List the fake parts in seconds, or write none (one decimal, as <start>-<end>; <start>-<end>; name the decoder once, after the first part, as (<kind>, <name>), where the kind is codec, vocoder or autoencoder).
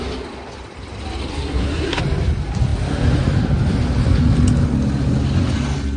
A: 1.3-2.0 (codec, SNAC)